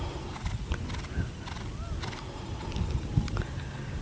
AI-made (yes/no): no